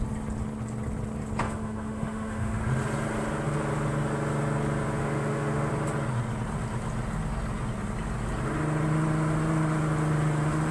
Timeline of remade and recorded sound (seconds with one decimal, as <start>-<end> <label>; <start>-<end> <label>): 0.0-1.4 recorded; 1.4-2.6 remade; 2.6-5.0 recorded; 5.0-5.7 remade; 5.7-10.7 recorded